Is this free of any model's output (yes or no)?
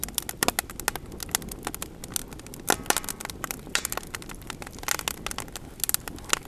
yes